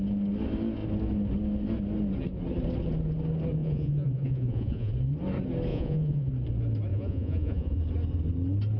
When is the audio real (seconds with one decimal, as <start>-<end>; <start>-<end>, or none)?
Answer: 0.0-3.6; 4.9-5.7; 6.3-6.9; 7.8-8.8